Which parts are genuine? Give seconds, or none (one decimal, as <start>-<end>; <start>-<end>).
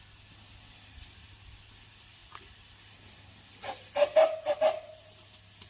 0.0-5.7